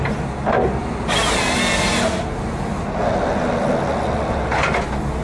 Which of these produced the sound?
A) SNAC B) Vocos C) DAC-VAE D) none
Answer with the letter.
D